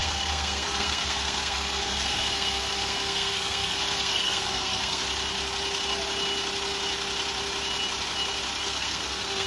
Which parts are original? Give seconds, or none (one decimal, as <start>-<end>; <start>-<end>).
5.0-8.6